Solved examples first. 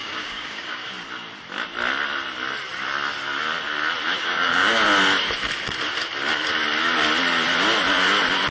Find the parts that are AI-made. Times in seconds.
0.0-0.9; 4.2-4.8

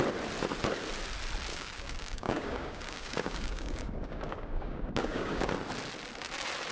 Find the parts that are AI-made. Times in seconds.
1.5-5.5

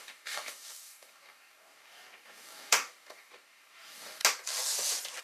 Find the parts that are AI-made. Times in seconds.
0.0-4.2

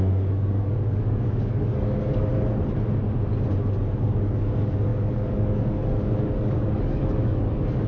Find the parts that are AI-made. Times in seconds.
0.0-2.3; 3.9-7.9

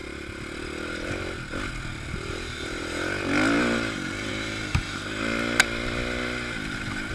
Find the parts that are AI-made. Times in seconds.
none

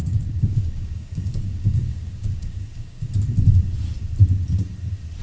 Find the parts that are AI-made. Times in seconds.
0.0-3.1